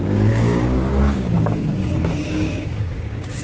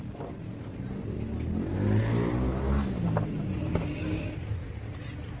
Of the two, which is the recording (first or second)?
second